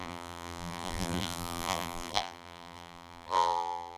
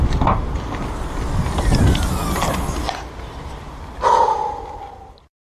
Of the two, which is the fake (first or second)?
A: first